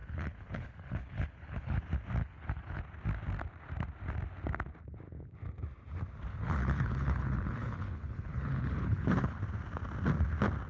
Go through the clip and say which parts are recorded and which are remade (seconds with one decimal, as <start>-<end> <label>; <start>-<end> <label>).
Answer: 0.0-1.8 remade; 1.8-2.2 recorded; 2.2-2.8 remade; 2.8-6.3 recorded; 6.3-9.4 remade; 9.4-10.7 recorded